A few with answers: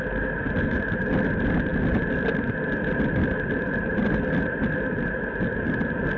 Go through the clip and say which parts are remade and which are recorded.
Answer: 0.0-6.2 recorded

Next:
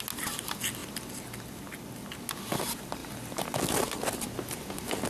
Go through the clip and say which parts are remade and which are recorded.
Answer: 0.0-5.1 recorded

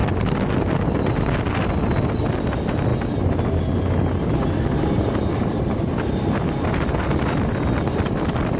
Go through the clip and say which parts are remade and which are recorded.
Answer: 0.0-8.6 recorded

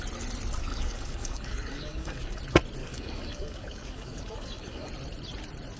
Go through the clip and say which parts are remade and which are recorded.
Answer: 0.0-0.6 recorded; 0.6-2.4 remade; 2.4-2.8 recorded; 2.8-4.9 remade; 4.9-5.8 recorded

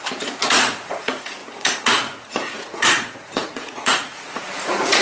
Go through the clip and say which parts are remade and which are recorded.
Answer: 0.0-5.0 remade